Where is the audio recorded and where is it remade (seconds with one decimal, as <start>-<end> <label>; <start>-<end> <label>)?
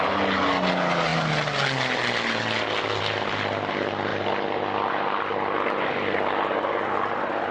0.0-7.5 recorded